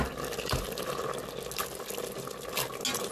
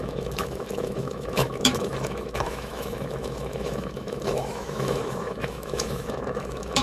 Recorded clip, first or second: first